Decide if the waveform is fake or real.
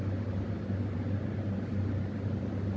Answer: real